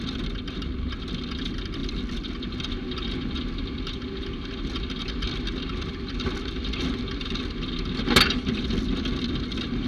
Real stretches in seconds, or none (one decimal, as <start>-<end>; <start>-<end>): 0.0-9.9